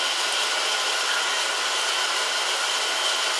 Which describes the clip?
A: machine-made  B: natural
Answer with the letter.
B